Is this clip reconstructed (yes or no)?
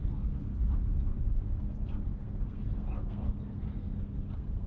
yes